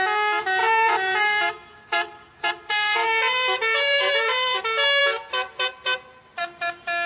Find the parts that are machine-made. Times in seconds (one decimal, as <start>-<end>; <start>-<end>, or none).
0.6-4.6